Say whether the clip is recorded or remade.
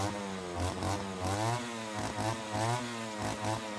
recorded